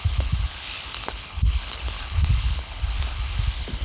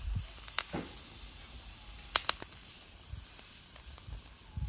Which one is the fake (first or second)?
first